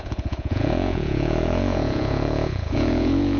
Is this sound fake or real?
fake